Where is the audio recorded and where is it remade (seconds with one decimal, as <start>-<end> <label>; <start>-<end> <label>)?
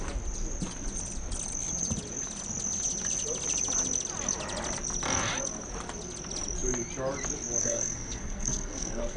0.0-7.6 recorded; 7.6-9.2 remade